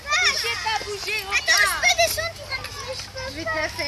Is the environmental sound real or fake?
real